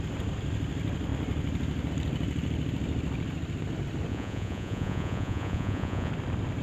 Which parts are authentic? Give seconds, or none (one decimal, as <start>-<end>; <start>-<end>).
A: 0.0-4.1; 6.1-6.6